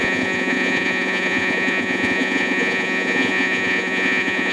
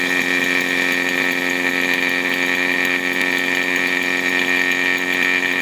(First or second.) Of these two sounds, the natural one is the second